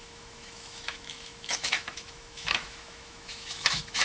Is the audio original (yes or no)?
no